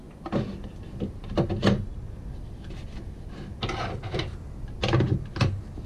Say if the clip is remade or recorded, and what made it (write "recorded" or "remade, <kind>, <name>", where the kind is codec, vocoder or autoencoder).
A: recorded